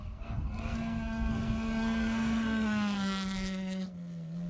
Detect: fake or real fake